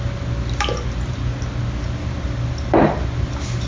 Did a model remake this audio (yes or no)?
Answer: no